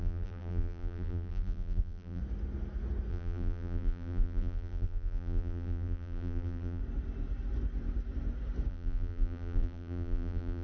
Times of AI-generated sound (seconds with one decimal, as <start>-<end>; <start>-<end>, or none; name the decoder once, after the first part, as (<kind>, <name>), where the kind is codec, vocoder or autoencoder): 0.0-2.2 (vocoder, BigVGAN v2); 3.1-6.8; 8.7-10.6